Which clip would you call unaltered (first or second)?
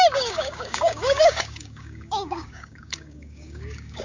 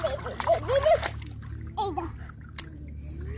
second